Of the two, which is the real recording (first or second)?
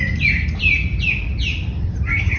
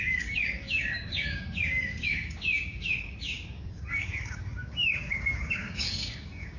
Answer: first